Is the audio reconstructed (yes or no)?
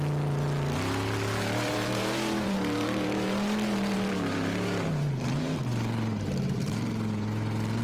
yes